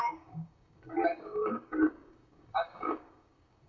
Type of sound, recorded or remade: remade